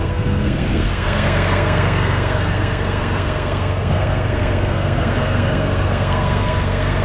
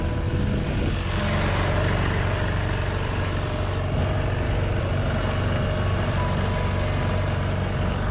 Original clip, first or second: second